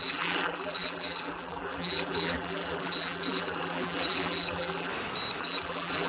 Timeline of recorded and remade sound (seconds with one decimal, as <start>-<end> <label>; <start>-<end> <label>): 0.0-4.9 remade; 4.9-5.4 recorded; 5.4-6.1 remade

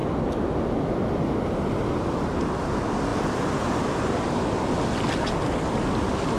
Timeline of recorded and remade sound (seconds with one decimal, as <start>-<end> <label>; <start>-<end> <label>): 0.0-6.4 recorded

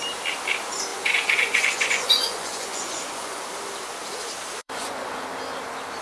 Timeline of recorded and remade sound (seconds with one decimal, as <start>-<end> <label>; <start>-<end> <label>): 0.0-0.9 recorded; 0.9-3.4 remade; 3.4-4.6 recorded; 4.6-5.2 remade; 5.2-6.0 recorded

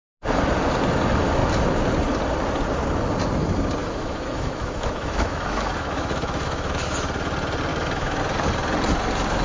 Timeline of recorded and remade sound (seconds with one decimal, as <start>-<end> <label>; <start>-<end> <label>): 0.0-3.8 recorded; 3.8-6.7 remade; 6.7-7.7 recorded; 7.7-8.2 remade; 8.2-9.4 recorded

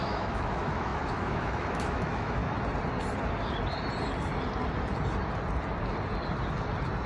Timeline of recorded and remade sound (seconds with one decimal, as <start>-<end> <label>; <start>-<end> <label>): 0.0-2.4 remade; 2.4-7.1 recorded